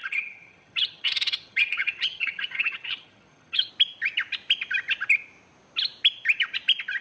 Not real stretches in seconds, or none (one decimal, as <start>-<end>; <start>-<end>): 0.0-3.7